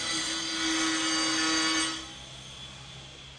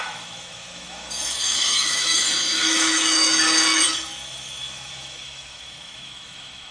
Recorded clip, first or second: first